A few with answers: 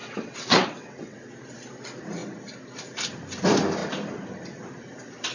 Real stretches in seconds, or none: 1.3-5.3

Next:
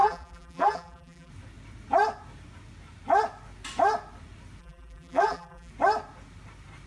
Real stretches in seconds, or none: 1.3-4.6; 5.7-6.9

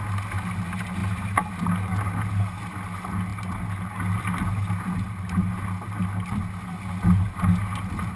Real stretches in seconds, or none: 0.0-8.2